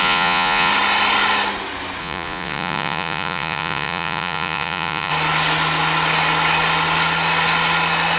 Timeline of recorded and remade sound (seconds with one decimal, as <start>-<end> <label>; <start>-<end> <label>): 0.0-0.7 remade; 0.7-2.0 recorded; 2.0-5.1 remade; 5.1-8.2 recorded

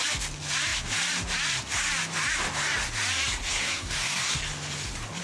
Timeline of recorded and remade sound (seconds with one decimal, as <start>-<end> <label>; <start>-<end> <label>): 0.0-3.5 recorded; 3.5-4.4 remade; 4.4-5.2 recorded

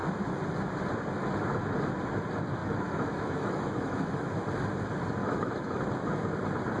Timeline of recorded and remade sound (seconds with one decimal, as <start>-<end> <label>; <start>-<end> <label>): 0.0-2.6 recorded; 2.6-4.4 remade; 4.4-5.2 recorded; 5.2-5.8 remade; 5.8-6.8 recorded